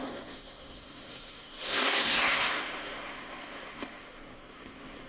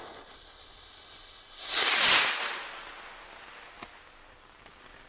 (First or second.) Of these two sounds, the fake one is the first